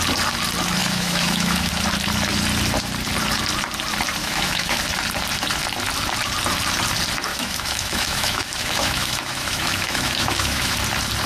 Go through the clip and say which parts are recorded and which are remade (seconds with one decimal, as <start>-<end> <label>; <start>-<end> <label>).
0.0-0.8 recorded; 0.8-1.7 remade; 1.7-4.2 recorded; 4.2-4.8 remade; 4.8-7.3 recorded; 7.3-10.8 remade; 10.8-11.3 recorded